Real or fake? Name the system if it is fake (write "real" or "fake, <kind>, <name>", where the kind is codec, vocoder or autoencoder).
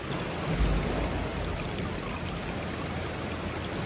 real